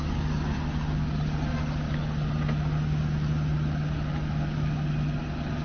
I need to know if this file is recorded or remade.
recorded